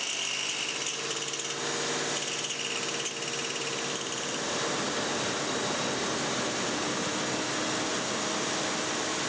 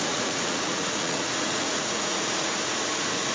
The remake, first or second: second